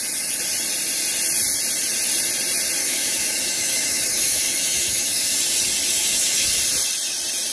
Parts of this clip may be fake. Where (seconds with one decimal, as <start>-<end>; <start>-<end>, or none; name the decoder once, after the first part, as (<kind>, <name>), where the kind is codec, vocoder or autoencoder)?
2.8-5.4 (autoencoder, DAC-VAE); 6.0-6.6